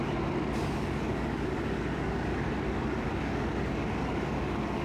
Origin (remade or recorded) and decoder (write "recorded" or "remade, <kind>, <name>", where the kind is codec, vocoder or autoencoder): remade, codec, DAC